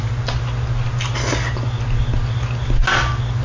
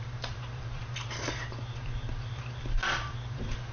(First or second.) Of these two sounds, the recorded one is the first